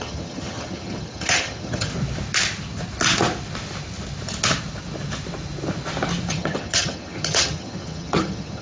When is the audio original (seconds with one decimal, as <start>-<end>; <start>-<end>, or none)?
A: 1.9-6.3